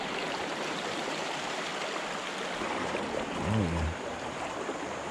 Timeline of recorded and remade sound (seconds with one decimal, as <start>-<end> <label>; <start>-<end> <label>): 0.0-1.7 remade; 1.7-2.6 recorded; 2.6-5.1 remade